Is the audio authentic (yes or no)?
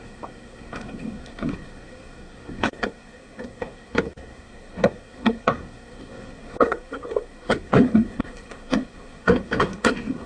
no